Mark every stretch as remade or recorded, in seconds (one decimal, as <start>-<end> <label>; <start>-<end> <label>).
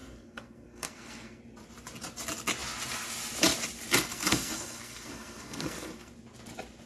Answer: 0.0-1.4 remade; 1.4-4.0 recorded; 4.0-6.1 remade; 6.1-6.9 recorded